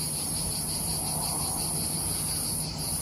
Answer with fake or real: real